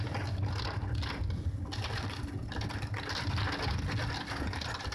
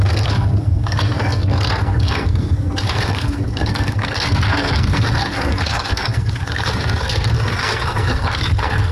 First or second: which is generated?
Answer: second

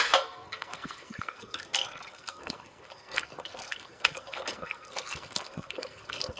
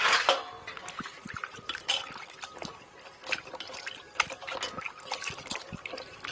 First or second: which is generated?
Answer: first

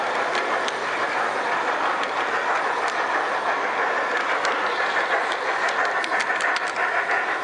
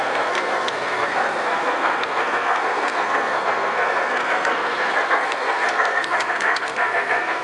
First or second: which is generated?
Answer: second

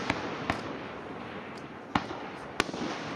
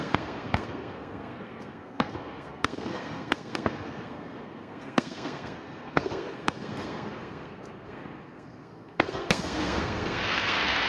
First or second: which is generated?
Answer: second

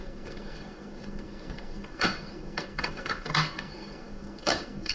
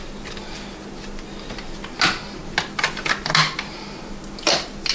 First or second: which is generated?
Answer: first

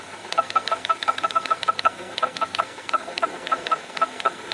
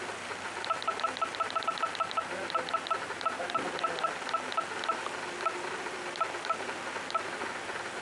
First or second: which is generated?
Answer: first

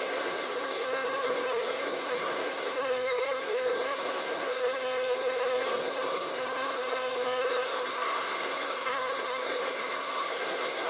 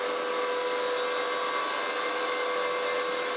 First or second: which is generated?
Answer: first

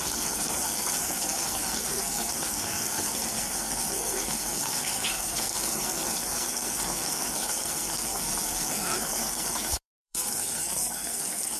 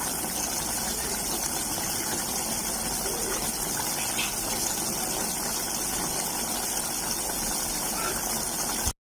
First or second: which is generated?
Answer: first